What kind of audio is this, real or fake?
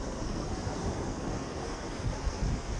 fake